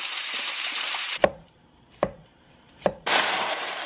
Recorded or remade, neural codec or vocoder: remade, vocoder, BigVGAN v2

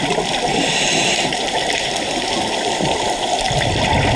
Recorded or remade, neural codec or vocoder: remade, vocoder, BigVGAN v2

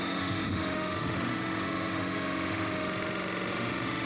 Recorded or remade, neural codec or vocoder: remade, autoencoder, DAC-VAE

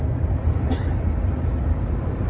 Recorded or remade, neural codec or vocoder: recorded